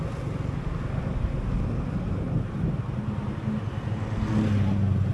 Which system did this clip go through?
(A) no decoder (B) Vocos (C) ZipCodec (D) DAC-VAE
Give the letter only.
A